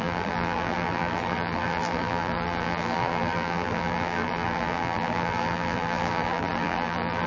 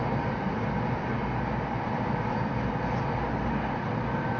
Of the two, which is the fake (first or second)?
first